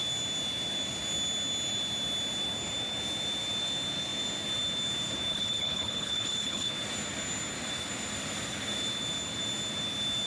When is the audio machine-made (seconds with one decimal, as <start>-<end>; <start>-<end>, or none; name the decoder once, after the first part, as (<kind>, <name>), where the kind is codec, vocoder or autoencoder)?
5.3-6.7 (codec, HILCodec)